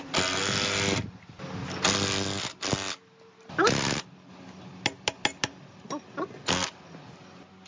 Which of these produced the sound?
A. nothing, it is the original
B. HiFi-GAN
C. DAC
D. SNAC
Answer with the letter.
A